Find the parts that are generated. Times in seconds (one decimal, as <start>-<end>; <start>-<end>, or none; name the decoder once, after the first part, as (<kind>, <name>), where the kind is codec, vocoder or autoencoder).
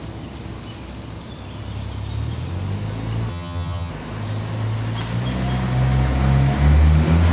3.3-3.9 (vocoder, HiFi-GAN)